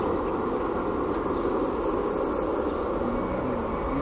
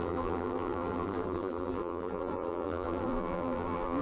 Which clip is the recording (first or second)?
first